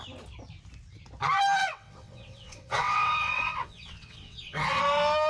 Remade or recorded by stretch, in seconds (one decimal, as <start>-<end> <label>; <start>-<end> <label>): 0.0-1.6 recorded; 1.6-4.8 remade; 4.8-5.3 recorded